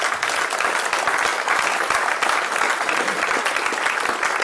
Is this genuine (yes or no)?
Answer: yes